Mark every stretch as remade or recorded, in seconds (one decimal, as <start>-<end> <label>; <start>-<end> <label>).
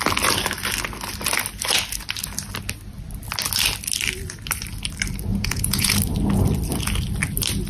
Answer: 0.0-5.3 recorded; 5.3-5.9 remade; 5.9-7.7 recorded